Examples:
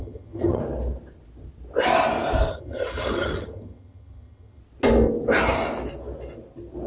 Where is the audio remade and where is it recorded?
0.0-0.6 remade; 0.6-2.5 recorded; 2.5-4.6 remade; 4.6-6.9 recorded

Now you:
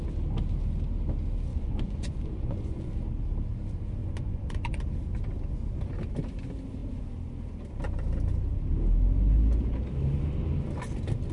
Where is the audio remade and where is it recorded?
0.0-1.5 recorded; 1.5-2.9 remade; 2.9-4.0 recorded; 4.0-4.8 remade; 4.8-11.3 recorded

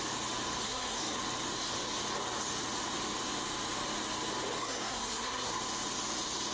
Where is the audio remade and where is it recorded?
0.0-0.6 recorded; 0.6-1.2 remade; 1.2-4.6 recorded; 4.6-5.6 remade; 5.6-6.5 recorded